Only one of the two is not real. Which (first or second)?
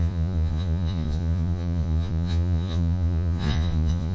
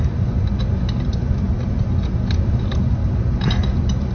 first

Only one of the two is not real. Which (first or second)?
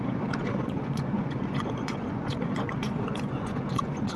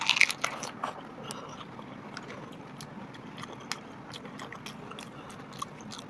first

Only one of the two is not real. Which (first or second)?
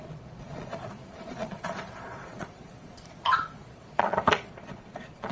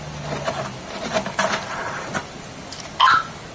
first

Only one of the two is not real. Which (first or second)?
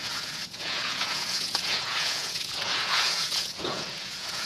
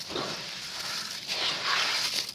first